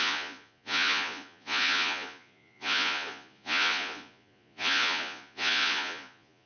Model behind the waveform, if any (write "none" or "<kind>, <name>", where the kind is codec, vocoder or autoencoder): vocoder, Vocos